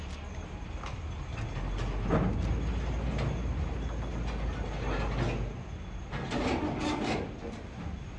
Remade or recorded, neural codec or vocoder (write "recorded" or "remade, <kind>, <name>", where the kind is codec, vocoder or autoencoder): recorded